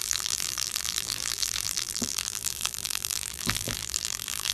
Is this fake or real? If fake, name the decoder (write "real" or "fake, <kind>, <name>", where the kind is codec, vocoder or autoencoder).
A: fake, vocoder, BigVGAN v2